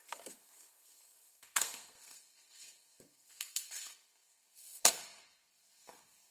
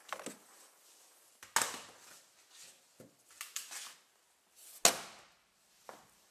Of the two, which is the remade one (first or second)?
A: first